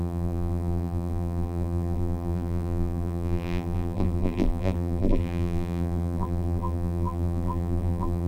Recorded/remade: remade